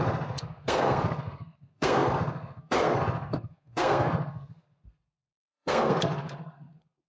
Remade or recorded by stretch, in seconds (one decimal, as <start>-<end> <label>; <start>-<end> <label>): 0.0-7.1 remade